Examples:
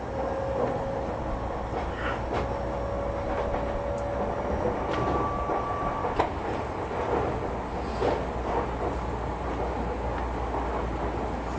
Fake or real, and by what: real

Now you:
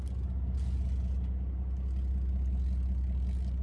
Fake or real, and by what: real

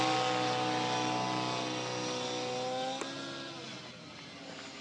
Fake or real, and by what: real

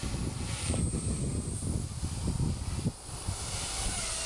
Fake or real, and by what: real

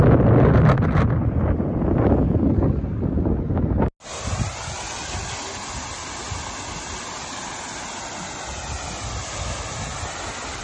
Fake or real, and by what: real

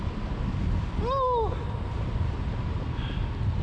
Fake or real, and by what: real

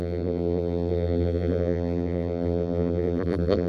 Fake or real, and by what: fake, vocoder, BigVGAN v2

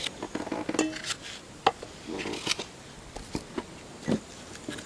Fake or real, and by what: real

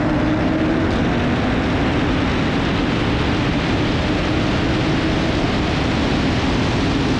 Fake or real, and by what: real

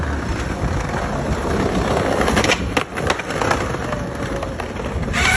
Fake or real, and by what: real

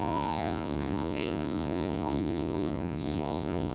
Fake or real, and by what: fake, vocoder, Vocos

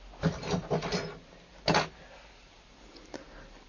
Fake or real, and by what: real